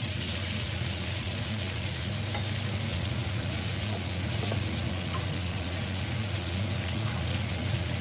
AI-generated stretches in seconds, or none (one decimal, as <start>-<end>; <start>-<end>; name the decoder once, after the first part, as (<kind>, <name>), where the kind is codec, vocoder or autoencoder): 0.0-2.1 (vocoder, Vocos); 2.9-8.0